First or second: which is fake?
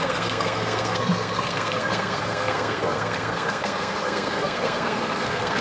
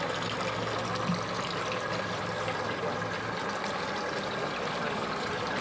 first